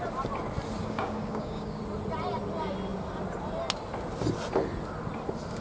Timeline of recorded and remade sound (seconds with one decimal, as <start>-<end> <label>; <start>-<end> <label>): 0.0-0.8 recorded; 0.8-1.8 remade; 1.8-5.6 recorded